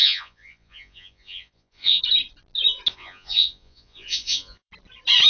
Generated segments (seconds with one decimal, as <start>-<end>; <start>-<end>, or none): 0.0-2.0; 2.9-4.7